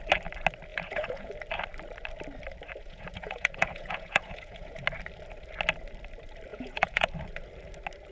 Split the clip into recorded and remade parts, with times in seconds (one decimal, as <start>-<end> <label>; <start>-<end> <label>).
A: 0.0-0.7 recorded; 0.7-1.3 remade; 1.3-2.8 recorded; 2.8-4.8 remade; 4.8-6.5 recorded; 6.5-7.1 remade; 7.1-8.1 recorded